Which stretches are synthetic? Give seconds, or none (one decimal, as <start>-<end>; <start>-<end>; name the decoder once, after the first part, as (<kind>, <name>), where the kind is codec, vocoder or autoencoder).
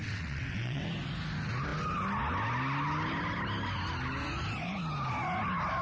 0.0-0.8 (vocoder, WaveNeXt)